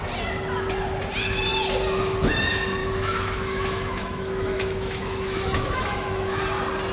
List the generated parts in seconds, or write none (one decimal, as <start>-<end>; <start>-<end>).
2.8-6.4